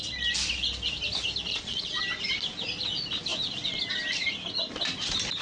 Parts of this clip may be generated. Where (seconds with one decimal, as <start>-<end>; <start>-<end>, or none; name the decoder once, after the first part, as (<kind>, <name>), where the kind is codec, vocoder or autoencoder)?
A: 1.5-2.0 (vocoder, Vocos)

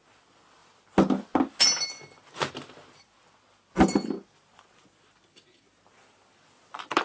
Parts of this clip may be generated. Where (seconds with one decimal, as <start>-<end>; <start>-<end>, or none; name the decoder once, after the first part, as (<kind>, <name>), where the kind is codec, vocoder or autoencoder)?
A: none

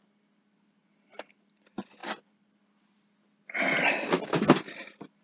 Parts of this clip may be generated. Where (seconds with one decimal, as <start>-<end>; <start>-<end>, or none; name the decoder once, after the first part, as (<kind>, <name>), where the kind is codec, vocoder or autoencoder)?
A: none

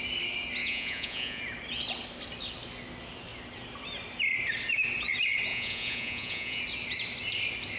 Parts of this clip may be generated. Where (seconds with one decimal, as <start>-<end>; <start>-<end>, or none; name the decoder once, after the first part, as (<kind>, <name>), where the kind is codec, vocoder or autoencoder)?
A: 0.6-1.4 (vocoder, Vocos); 5.5-6.6

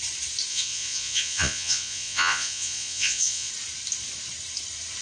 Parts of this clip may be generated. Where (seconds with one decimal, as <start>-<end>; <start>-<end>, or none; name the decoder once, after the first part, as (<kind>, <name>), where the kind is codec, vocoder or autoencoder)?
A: 0.5-3.5 (vocoder, Vocos)

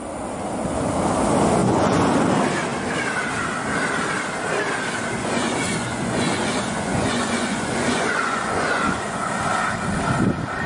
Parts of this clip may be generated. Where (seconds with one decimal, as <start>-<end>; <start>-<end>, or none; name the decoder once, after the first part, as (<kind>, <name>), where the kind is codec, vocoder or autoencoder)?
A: 1.6-2.1 (vocoder, Vocos); 5.2-9.3

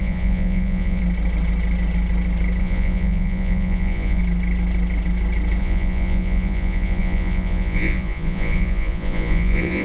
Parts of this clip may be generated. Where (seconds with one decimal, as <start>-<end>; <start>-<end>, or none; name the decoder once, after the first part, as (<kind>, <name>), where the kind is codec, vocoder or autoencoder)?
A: 0.0-1.0 (vocoder, Vocos); 2.6-4.2; 5.6-9.8

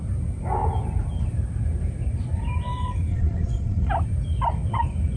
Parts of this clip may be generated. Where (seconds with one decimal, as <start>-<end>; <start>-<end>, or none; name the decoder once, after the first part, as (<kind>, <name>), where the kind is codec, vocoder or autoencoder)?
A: 3.1-3.9 (vocoder, Vocos)